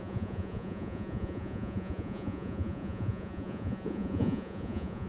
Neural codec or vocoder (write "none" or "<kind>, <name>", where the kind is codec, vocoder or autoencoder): vocoder, Vocos